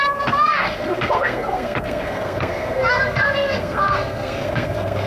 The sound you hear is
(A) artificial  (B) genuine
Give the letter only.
A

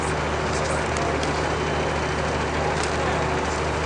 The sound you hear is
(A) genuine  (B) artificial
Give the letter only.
A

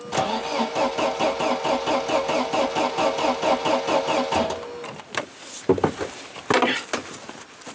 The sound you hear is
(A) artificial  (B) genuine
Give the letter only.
B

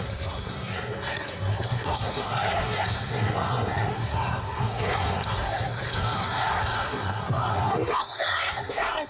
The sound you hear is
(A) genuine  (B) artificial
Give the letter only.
B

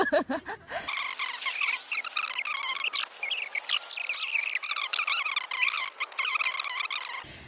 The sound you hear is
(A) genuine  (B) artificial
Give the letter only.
A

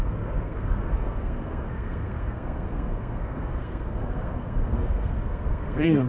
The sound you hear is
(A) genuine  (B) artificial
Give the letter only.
B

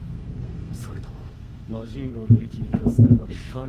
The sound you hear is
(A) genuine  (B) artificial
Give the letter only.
B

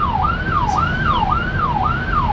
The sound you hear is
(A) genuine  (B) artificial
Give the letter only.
A